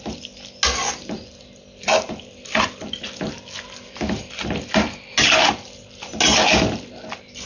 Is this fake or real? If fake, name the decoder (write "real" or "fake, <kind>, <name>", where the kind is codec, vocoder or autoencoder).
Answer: real